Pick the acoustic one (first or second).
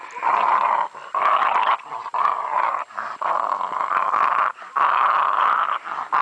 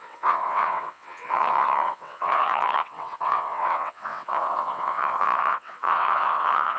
first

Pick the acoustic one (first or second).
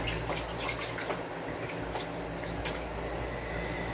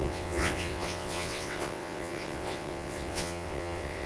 first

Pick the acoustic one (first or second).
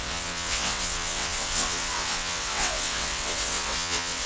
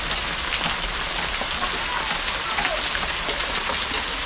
second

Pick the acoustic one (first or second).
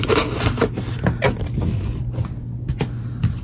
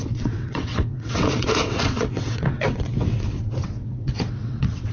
first